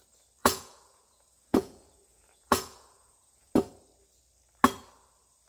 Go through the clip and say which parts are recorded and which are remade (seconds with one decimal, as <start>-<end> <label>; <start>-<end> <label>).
0.0-0.4 recorded; 0.4-3.5 remade; 3.5-5.5 recorded